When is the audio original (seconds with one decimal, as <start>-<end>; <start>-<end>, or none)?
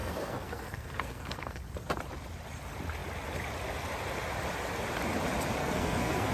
1.6-5.6